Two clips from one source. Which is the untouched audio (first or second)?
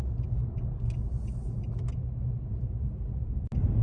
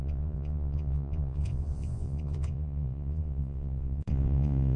first